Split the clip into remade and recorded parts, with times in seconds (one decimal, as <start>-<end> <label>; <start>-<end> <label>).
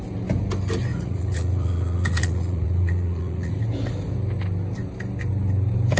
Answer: 0.0-0.9 recorded; 0.9-3.6 remade; 3.6-6.0 recorded